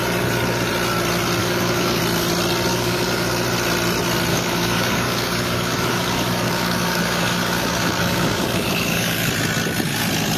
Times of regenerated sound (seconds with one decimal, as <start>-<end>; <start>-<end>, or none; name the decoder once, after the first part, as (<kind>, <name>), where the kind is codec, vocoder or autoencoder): 1.4-2.0 (codec, DAC); 2.7-3.3; 4.3-9.3